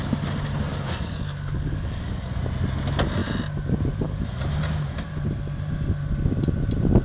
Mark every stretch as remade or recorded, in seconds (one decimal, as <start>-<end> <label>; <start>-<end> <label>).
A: 0.0-0.7 recorded; 0.7-2.4 remade; 2.4-7.0 recorded